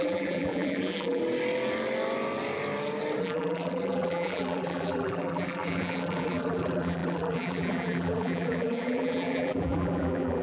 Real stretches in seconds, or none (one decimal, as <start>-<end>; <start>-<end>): 1.2-3.2